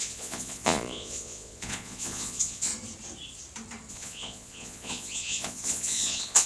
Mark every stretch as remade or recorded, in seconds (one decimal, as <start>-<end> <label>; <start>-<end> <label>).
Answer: 0.0-2.7 remade; 2.7-3.9 recorded; 3.9-6.5 remade